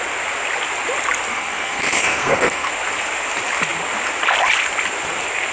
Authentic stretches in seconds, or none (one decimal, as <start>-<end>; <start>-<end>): 0.0-1.3; 2.7-5.5